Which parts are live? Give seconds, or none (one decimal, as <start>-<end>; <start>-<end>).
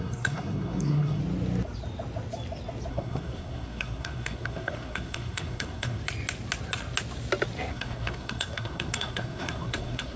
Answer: 1.2-2.9; 6.0-7.7